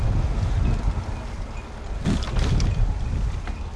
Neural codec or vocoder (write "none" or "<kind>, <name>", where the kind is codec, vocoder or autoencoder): none